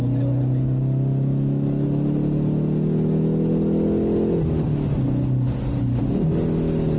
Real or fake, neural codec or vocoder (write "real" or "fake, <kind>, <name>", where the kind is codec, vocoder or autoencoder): real